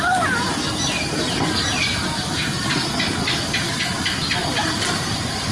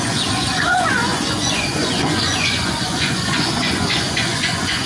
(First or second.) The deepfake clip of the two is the second